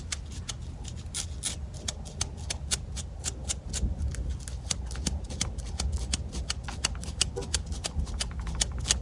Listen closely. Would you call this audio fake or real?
real